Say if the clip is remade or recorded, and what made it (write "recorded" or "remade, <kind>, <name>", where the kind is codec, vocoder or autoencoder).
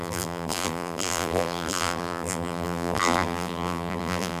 remade, vocoder, BigVGAN v2